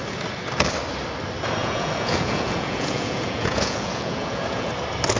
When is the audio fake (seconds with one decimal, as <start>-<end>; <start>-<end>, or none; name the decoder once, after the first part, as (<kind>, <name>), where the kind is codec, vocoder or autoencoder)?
1.6-4.7 (vocoder, Vocos)